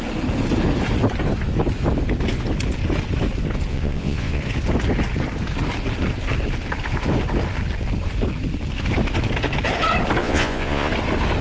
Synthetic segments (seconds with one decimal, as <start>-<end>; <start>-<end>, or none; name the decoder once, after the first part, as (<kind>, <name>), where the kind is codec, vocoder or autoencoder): 3.7-4.4 (vocoder, Vocos); 10.2-10.9